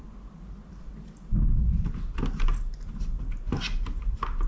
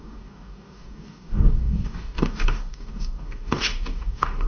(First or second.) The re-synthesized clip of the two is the second